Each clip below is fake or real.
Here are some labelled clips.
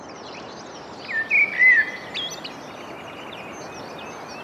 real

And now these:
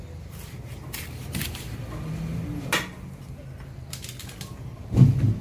real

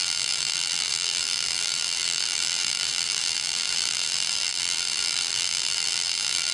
fake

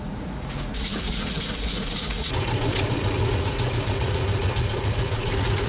fake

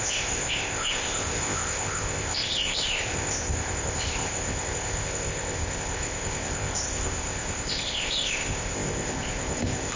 fake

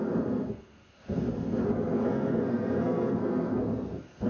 fake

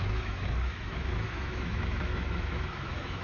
fake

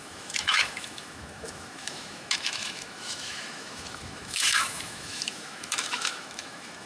fake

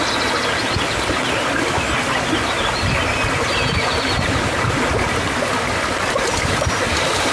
real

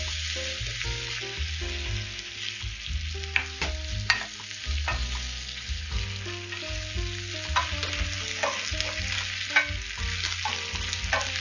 real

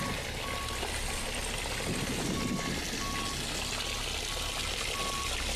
real